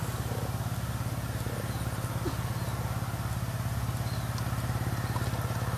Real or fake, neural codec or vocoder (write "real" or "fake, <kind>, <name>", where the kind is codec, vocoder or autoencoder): real